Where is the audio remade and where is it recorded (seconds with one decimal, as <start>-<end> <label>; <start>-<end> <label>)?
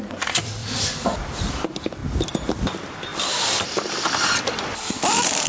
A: 0.0-2.0 remade; 2.0-2.6 recorded; 2.6-5.5 remade